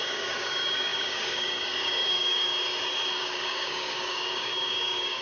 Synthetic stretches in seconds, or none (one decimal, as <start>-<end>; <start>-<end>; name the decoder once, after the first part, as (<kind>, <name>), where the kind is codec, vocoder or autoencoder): 0.0-2.5 (codec, DAC); 3.2-5.2